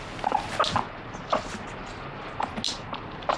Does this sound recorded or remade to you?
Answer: recorded